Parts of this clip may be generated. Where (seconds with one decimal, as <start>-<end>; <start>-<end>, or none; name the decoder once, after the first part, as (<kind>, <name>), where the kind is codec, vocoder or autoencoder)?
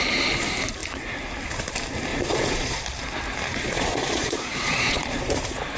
2.1-2.8 (vocoder, Vocos); 3.5-5.3